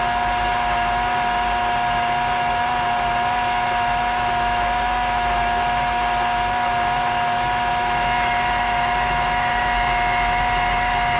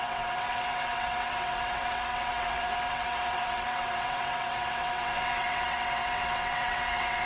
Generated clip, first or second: second